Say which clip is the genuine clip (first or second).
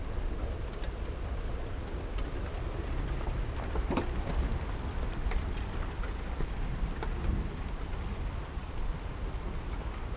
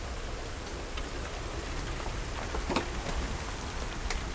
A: second